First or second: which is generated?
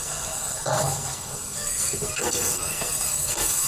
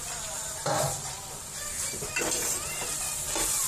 first